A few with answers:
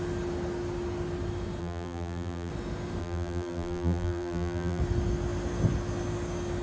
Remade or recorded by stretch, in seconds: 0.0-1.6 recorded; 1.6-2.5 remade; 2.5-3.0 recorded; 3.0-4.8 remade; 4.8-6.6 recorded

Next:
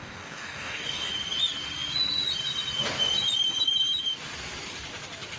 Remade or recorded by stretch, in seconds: 0.0-1.1 remade; 1.1-5.4 recorded

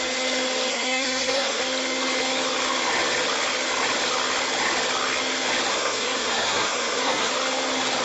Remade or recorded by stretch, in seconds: 0.0-0.7 recorded; 0.7-1.6 remade; 1.6-5.7 recorded; 5.7-7.3 remade; 7.3-8.0 recorded

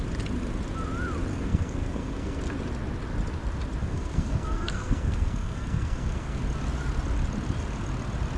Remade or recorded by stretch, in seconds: 0.0-1.3 recorded; 1.3-2.4 remade; 2.4-3.8 recorded; 3.8-6.4 remade; 6.4-8.4 recorded

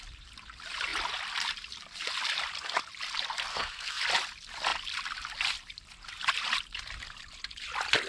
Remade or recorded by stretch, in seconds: 0.0-3.5 recorded; 3.5-4.0 remade; 4.0-8.1 recorded